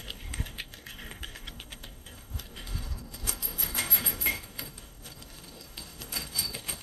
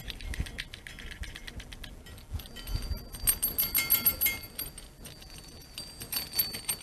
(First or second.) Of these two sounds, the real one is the second